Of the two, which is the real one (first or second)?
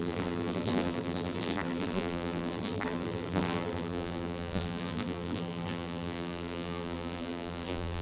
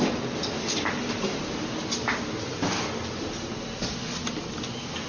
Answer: second